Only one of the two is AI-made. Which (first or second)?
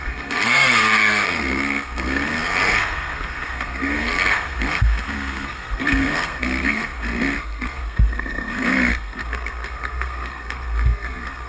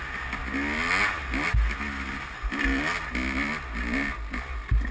first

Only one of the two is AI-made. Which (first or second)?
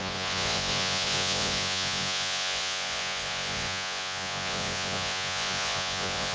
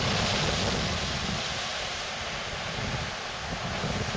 first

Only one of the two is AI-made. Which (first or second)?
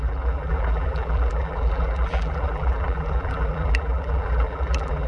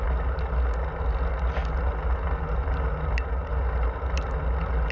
first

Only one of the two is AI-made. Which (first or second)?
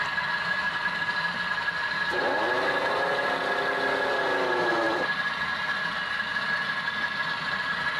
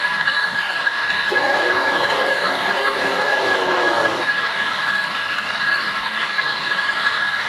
second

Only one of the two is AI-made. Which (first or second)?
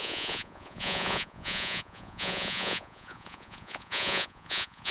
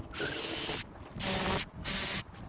first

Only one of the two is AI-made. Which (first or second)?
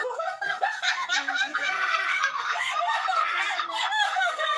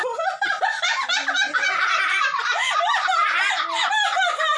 first